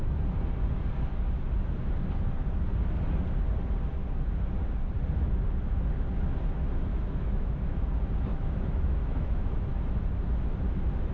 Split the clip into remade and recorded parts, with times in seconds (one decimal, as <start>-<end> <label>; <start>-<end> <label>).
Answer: 0.0-6.9 recorded; 6.9-7.8 remade; 7.8-8.3 recorded; 8.3-9.6 remade; 9.6-11.1 recorded